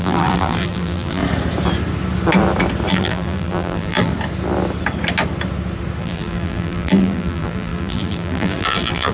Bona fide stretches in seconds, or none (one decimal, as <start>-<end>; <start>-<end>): 1.2-2.9; 4.1-6.0